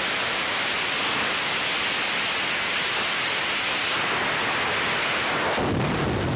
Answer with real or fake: real